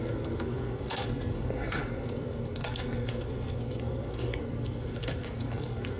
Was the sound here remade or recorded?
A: remade